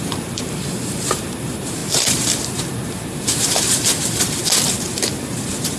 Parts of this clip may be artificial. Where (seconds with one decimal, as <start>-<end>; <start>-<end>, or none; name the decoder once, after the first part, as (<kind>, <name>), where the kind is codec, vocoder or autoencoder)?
0.0-5.8 (vocoder, BigVGAN v2)

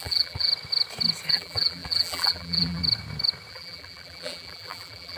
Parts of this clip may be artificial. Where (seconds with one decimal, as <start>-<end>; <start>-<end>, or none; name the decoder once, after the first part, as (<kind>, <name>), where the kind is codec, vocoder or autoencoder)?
0.0-0.5 (vocoder, BigVGAN v2); 1.3-2.8; 3.5-5.2